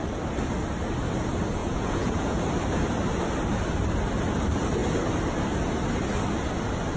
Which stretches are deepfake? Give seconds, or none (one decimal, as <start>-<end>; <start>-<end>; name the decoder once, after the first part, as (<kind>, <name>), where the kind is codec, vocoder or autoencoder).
1.6-2.4 (vocoder, Vocos)